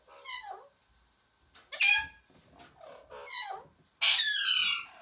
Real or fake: real